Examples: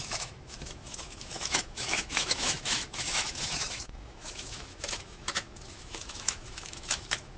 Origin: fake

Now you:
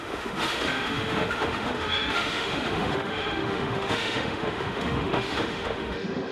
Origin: fake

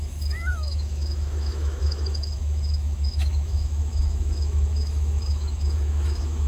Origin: fake